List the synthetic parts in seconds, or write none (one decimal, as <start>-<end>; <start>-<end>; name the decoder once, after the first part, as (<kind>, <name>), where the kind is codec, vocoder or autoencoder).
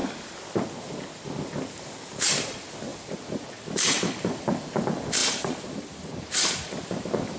1.8-7.4 (vocoder, BigVGAN v2)